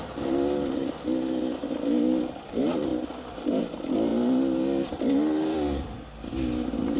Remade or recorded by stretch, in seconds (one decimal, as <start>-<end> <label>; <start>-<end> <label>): 0.0-7.0 recorded

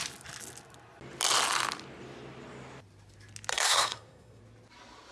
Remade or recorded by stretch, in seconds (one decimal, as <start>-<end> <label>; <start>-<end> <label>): 0.0-3.5 recorded; 3.5-4.4 remade; 4.4-5.1 recorded